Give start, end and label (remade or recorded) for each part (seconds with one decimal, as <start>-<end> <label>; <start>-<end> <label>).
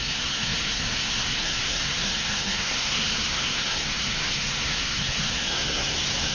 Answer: 0.0-6.3 remade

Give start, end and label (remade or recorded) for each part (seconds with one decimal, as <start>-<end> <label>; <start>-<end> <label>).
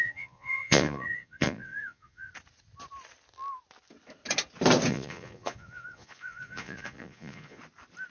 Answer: 0.0-2.3 remade; 2.3-4.9 recorded; 4.9-7.6 remade; 7.6-8.1 recorded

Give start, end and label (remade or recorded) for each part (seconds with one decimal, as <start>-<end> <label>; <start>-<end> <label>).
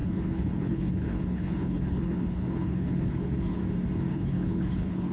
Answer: 0.0-3.6 remade; 3.6-4.1 recorded; 4.1-5.1 remade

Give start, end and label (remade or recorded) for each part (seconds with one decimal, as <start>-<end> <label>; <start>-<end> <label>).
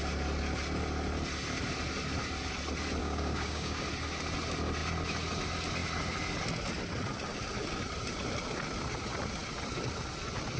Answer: 0.0-3.0 recorded; 3.0-3.8 remade; 3.8-10.6 recorded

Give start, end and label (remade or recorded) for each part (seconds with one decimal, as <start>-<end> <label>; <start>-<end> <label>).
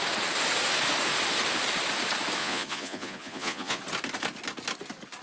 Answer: 0.0-2.4 recorded; 2.4-3.8 remade; 3.8-5.2 recorded